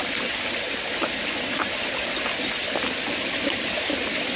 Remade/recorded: recorded